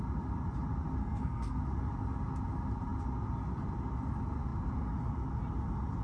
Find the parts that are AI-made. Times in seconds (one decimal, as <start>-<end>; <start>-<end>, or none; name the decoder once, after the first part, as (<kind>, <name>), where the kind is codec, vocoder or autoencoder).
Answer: 1.0-1.6 (codec, SNAC)